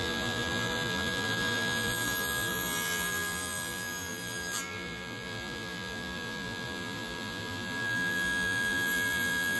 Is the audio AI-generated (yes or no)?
yes